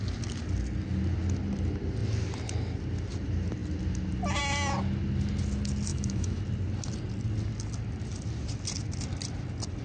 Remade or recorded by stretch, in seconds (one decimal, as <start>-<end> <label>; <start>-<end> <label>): 0.0-5.9 recorded; 5.9-6.4 remade; 6.4-9.8 recorded